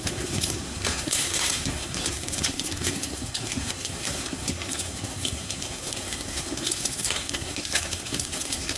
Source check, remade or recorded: remade